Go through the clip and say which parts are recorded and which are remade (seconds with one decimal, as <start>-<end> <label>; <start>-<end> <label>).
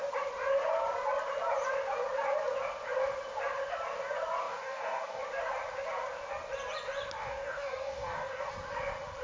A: 0.0-4.4 recorded; 4.4-5.2 remade; 5.2-7.2 recorded; 7.2-8.5 remade; 8.5-9.2 recorded